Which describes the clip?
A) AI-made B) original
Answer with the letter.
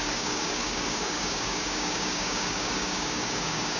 A